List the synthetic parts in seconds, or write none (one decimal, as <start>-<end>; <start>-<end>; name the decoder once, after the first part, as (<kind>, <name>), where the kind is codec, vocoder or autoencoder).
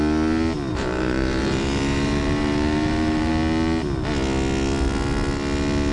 0.7-3.3 (vocoder, BigVGAN v2)